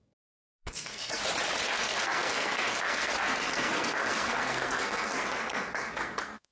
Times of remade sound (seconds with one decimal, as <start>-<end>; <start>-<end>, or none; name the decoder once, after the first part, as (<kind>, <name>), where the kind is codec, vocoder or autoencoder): 0.0-1.2 (codec, SNAC); 1.7-6.5

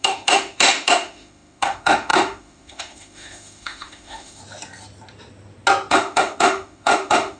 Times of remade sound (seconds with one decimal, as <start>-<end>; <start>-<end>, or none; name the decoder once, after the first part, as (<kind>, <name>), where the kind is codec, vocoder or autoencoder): 0.0-4.4 (autoencoder, DAC-VAE); 5.9-7.4

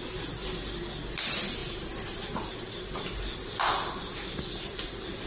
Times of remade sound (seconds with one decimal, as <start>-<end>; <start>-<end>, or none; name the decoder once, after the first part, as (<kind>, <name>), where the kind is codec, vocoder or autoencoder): none